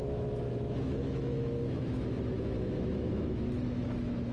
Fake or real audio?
fake